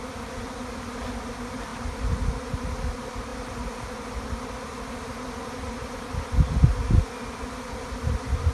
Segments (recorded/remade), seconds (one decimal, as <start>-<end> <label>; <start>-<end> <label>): 0.0-8.5 recorded